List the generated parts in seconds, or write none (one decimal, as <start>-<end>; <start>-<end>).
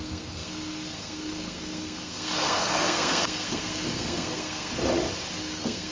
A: 0.0-4.7; 5.4-5.9